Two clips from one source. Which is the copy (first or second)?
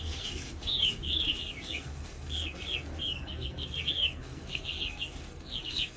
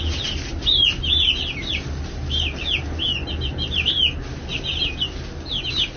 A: first